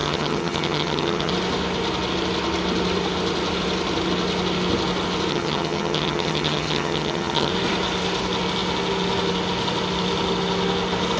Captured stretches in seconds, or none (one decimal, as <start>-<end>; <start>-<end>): 1.3-5.3; 7.5-11.2